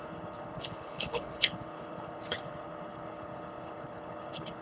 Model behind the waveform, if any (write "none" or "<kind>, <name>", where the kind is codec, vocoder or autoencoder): codec, HILCodec